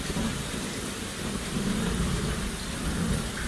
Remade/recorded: recorded